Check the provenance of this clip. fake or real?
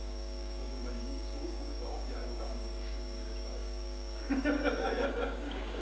fake